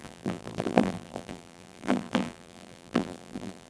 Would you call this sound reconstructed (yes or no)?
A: yes